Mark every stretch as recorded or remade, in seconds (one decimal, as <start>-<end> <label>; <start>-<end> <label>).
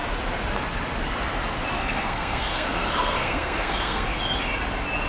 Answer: 0.0-1.8 recorded; 1.8-4.2 remade; 4.2-5.1 recorded